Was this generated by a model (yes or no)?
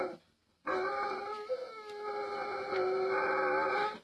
no